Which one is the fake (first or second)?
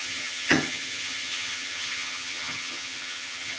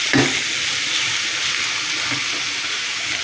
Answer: first